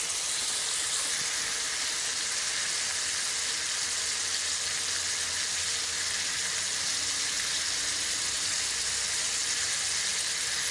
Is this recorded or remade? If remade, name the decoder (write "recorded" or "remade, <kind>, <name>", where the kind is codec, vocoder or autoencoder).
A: recorded